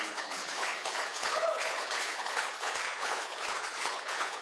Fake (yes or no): yes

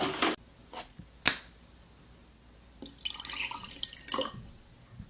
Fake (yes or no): no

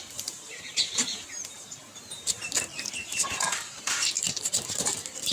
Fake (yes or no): yes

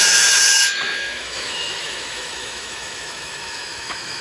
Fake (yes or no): yes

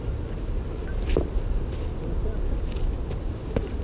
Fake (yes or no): no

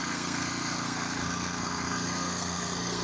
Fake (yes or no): yes